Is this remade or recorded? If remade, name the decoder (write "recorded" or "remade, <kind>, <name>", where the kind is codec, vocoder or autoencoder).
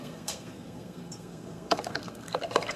remade, codec, SNAC